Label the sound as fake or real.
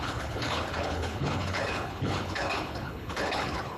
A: fake